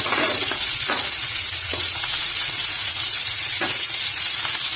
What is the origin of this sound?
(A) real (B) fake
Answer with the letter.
B